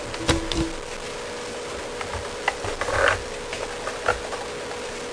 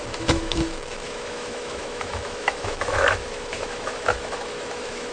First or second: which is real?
first